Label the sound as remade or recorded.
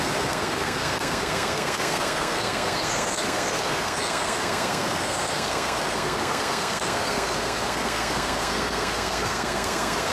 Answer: remade